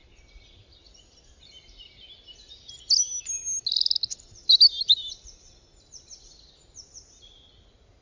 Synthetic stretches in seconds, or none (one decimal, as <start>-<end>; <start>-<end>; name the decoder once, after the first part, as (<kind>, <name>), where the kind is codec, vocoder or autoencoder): none